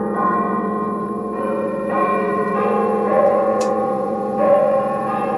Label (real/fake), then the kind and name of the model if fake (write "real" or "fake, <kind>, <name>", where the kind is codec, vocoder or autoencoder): fake, vocoder, Vocos